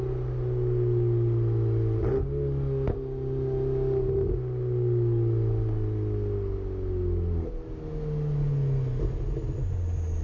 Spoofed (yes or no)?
no